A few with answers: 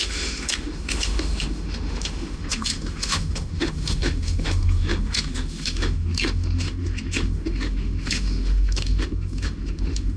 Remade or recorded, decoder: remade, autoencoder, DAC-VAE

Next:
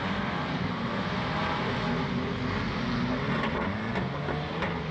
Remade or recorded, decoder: recorded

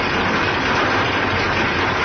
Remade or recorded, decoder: remade, vocoder, BigVGAN v2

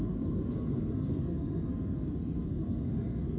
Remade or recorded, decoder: remade, codec, SNAC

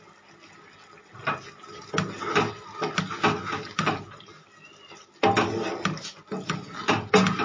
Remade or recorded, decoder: recorded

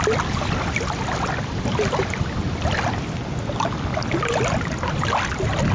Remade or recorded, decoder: recorded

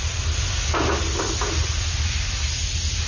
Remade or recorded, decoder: recorded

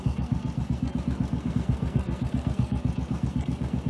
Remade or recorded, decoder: remade, codec, SNAC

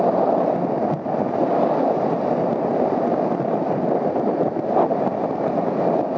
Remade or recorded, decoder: recorded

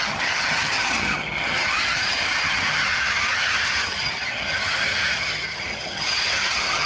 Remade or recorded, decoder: remade, vocoder, HiFi-GAN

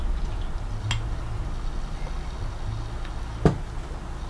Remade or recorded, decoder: recorded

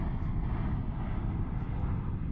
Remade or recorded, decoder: recorded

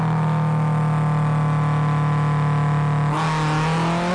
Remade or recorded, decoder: recorded